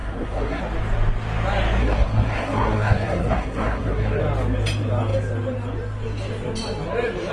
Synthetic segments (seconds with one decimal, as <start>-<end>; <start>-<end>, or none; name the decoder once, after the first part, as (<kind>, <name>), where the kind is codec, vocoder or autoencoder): 0.0-0.6 (codec, SNAC); 1.8-4.2